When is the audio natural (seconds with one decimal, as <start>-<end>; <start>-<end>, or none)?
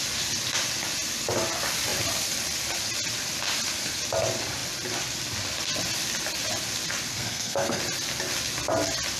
0.0-7.1; 7.8-9.2